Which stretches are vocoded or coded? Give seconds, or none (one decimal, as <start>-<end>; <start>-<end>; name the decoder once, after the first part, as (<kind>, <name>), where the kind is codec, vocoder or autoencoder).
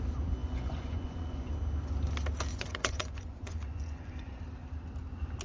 0.4-1.5 (vocoder, Vocos); 2.5-4.4